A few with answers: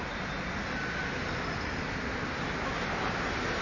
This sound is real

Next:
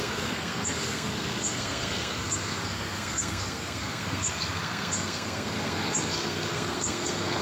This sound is fake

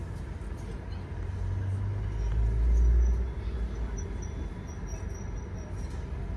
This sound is real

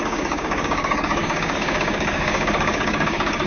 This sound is fake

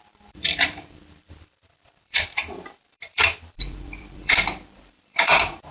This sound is fake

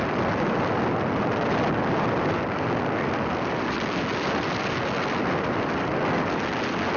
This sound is real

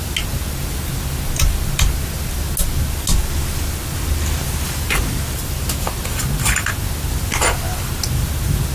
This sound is real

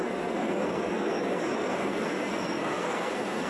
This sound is fake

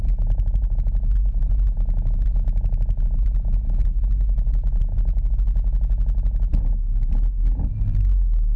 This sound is real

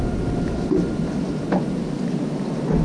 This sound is real